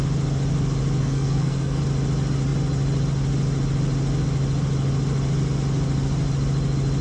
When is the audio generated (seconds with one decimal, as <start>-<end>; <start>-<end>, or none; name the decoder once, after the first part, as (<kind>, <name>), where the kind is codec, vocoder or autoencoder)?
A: 1.0-1.8 (codec, SNAC)